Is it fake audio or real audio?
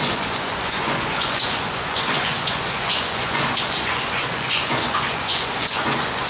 fake